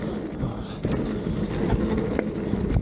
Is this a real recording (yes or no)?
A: yes